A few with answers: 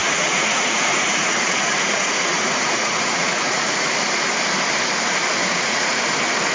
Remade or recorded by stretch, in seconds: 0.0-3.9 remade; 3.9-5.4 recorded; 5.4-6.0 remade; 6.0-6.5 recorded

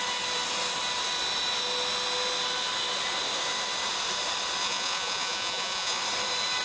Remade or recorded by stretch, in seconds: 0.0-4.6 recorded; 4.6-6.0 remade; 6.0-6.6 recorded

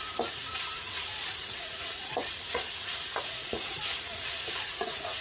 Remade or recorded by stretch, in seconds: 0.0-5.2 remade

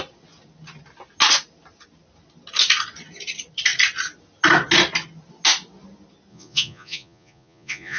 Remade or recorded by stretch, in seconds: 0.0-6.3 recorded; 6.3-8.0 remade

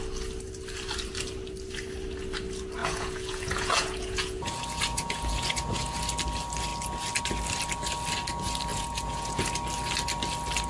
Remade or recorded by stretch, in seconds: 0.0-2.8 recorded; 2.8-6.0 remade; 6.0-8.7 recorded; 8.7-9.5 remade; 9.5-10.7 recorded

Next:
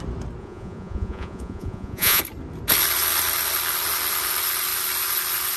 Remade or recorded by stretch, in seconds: 0.0-0.4 recorded; 0.4-2.2 remade; 2.2-5.6 recorded

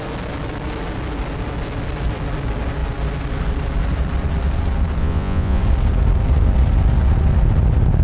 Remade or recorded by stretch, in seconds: 0.0-5.0 recorded; 5.0-5.6 remade; 5.6-8.0 recorded